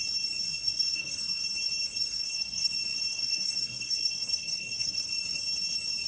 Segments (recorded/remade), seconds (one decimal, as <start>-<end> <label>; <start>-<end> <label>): 0.0-0.5 recorded; 0.5-1.4 remade; 1.4-1.9 recorded; 1.9-2.7 remade; 2.7-3.1 recorded; 3.1-5.1 remade; 5.1-6.1 recorded